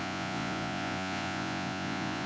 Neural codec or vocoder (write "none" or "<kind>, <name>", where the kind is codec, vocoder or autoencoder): vocoder, Vocos